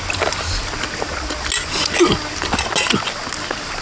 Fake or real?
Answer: real